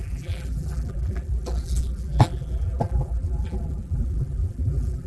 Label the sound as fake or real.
fake